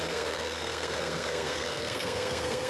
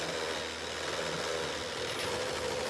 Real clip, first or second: second